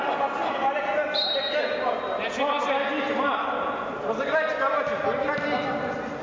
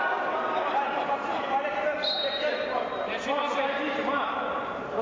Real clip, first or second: first